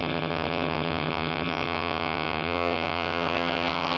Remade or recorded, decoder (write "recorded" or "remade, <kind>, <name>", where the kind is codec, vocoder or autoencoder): remade, vocoder, HiFi-GAN